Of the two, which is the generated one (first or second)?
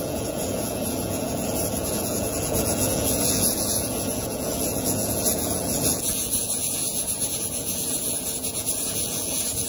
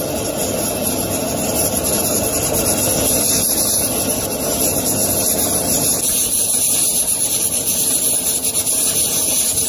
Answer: first